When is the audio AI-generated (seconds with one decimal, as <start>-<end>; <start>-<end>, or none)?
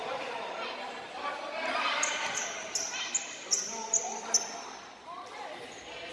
0.0-3.8